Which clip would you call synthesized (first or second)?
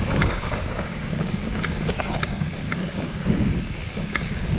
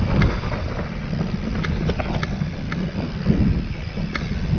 first